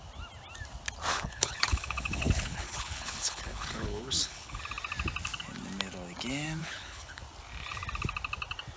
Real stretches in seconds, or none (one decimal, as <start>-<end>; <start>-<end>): 0.0-1.1; 4.6-6.6; 7.2-8.8